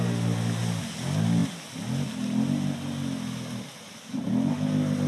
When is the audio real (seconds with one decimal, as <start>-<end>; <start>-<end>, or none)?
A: 0.0-5.1